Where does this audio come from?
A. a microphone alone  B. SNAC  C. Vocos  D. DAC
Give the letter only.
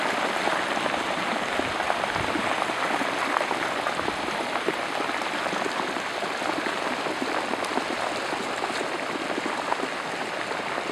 A